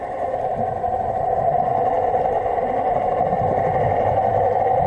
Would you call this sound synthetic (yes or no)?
no